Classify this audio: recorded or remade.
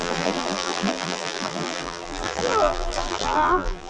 remade